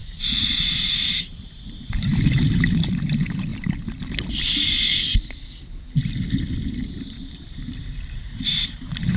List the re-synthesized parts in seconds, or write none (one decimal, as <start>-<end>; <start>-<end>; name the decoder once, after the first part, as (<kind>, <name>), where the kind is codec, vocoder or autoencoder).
0.0-3.5 (vocoder, BigVGAN v2); 7.5-9.2